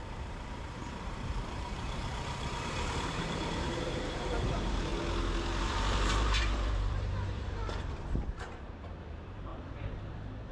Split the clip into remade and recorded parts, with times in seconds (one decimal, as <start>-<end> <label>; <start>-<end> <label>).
0.0-4.9 remade; 4.9-5.6 recorded; 5.6-7.6 remade; 7.6-8.4 recorded; 8.4-9.5 remade; 9.5-10.1 recorded; 10.1-10.5 remade